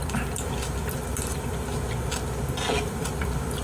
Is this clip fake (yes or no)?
no